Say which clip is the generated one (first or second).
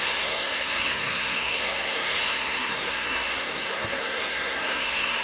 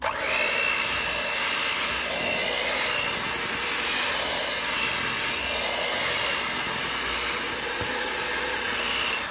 first